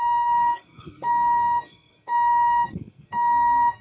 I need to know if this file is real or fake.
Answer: fake